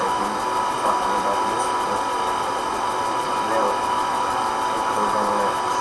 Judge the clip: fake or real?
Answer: real